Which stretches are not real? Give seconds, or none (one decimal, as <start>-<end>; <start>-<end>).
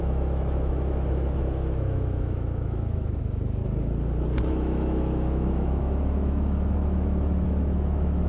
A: 0.0-3.6; 4.5-8.3